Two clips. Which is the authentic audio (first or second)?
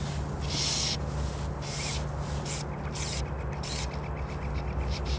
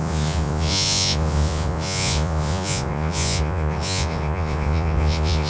first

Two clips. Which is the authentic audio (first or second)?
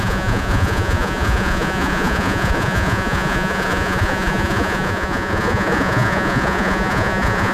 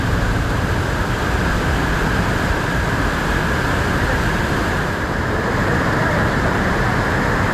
second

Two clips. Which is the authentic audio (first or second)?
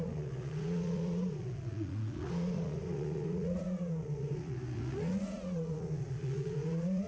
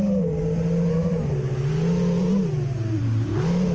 second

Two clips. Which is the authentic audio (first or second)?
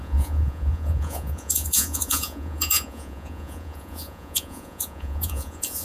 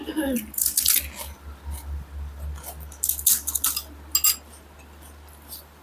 second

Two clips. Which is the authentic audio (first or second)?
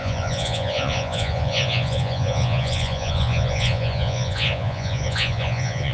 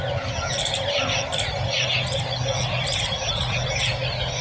second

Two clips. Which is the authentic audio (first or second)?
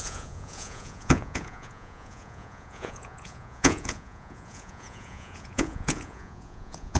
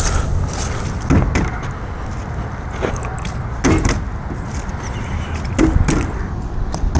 second